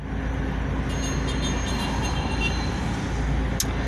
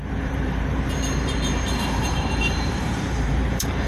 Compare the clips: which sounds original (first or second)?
first